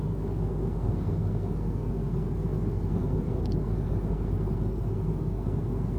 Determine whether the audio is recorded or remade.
remade